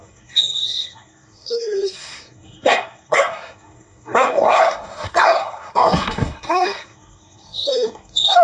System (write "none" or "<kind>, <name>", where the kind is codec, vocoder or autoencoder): codec, SNAC